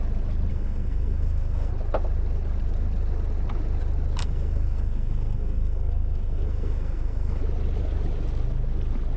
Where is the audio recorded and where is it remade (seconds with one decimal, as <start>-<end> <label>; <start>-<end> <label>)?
0.0-0.5 recorded; 0.5-1.7 remade; 1.7-4.2 recorded; 4.2-7.4 remade; 7.4-9.2 recorded